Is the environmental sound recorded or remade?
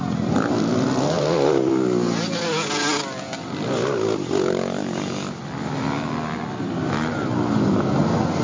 recorded